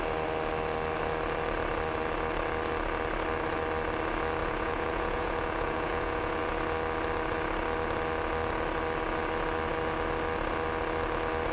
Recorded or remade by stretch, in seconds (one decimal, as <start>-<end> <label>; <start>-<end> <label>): 0.0-4.4 recorded; 4.4-6.5 remade; 6.5-11.5 recorded